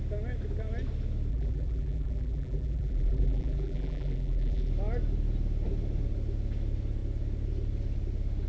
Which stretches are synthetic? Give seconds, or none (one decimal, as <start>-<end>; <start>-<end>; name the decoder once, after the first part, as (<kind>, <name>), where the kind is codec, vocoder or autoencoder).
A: 1.3-4.7 (vocoder, BigVGAN v2)